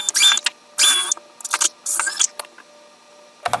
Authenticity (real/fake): real